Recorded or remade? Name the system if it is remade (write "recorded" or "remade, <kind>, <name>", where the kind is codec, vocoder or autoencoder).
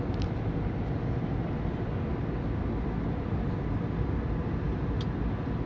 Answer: recorded